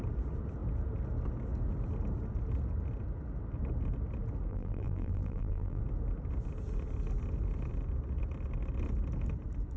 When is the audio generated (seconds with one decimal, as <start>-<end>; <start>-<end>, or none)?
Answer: 4.5-5.8